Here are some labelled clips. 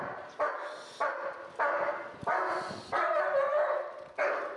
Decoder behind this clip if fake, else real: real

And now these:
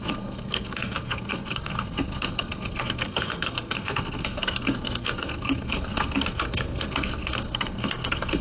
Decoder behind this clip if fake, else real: fake, codec, SNAC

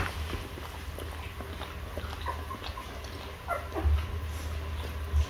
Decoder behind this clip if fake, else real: real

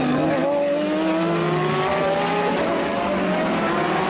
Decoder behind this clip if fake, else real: real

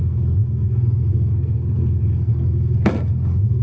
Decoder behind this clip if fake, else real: fake, codec, SNAC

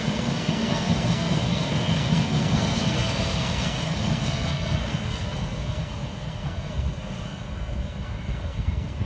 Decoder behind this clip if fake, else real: fake, codec, SNAC